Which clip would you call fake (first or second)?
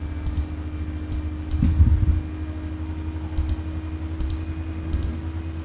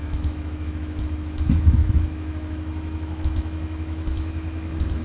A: second